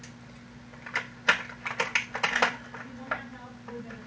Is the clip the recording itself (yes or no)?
yes